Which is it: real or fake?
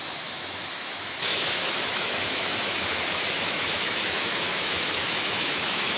fake